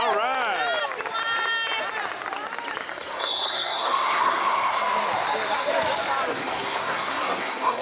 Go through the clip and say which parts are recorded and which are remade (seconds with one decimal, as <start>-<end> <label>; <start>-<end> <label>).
0.0-2.9 recorded; 2.9-4.8 remade; 4.8-6.3 recorded; 6.3-7.8 remade